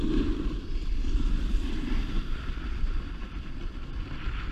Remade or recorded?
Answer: recorded